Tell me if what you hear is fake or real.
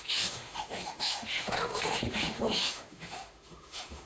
fake